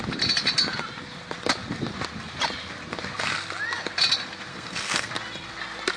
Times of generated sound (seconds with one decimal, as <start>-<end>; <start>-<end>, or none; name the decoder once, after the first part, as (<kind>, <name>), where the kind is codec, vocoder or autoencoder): 4.5-5.1 (codec, SNAC)